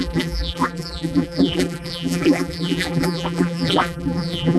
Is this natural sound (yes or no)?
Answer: no